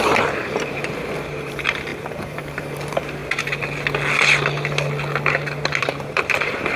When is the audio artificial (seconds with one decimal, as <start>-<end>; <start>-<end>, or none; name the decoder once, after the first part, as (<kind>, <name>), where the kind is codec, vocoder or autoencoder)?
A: 0.0-3.2 (vocoder, BigVGAN v2); 5.8-6.8